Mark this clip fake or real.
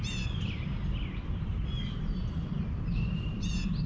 real